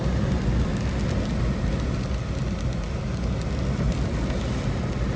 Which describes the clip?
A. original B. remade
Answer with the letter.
A